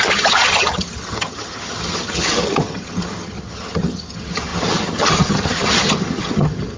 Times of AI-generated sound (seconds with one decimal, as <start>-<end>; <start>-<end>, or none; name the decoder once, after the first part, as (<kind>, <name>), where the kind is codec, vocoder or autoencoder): 0.0-6.8 (vocoder, HiFi-GAN)